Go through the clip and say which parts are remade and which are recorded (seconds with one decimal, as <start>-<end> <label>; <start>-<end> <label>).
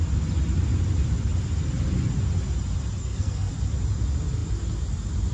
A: 0.0-3.0 recorded; 3.0-3.5 remade; 3.5-5.3 recorded